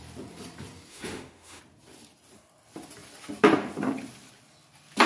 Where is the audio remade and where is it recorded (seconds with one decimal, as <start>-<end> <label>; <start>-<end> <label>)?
0.0-0.9 recorded; 0.9-1.6 remade; 1.6-5.1 recorded